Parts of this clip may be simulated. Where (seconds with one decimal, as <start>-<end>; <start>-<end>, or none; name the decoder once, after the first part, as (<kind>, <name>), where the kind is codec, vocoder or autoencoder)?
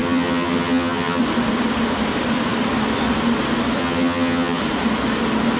0.0-1.2 (vocoder, HiFi-GAN); 3.8-4.6